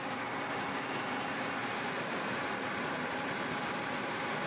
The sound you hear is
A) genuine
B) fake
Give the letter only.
A